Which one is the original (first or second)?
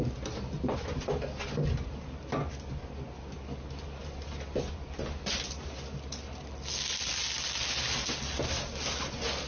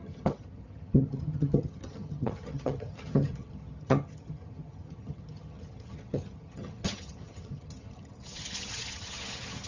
first